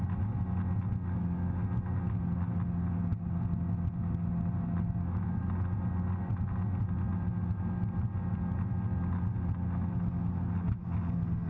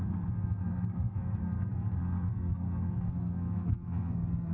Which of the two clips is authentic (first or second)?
first